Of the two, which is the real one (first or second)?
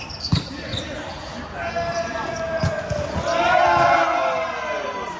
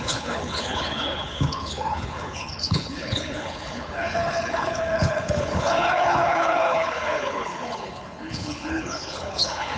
first